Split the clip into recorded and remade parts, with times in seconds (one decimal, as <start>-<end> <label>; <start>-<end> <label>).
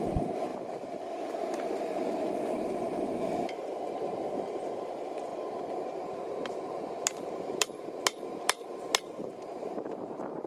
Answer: 0.0-0.5 remade; 0.5-1.7 recorded; 1.7-5.3 remade; 5.3-6.0 recorded; 6.0-10.5 remade